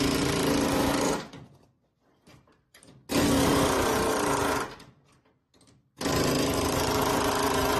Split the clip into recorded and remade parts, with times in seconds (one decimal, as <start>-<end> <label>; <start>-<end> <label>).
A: 0.0-4.4 remade; 4.4-5.3 recorded; 5.3-7.8 remade